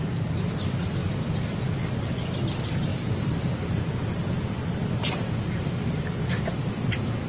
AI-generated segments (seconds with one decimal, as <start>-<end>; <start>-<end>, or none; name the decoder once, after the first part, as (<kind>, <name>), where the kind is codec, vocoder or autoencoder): none